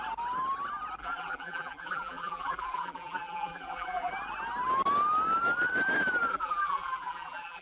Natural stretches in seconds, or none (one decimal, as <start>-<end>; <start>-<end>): 0.0-1.0; 4.1-6.3